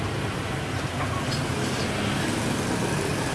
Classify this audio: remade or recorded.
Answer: recorded